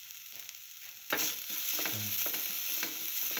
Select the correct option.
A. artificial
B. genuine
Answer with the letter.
B